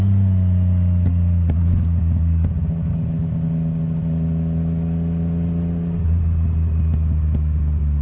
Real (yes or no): yes